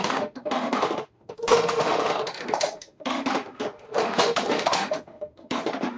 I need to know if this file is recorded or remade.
remade